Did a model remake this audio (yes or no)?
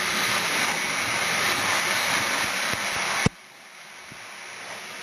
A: no